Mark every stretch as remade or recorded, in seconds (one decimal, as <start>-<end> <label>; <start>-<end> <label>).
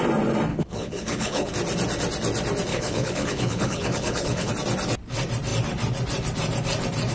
0.0-0.5 recorded; 0.5-1.5 remade; 1.5-2.7 recorded; 2.7-4.5 remade; 4.5-7.1 recorded